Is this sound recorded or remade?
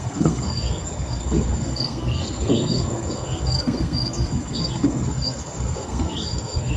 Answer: remade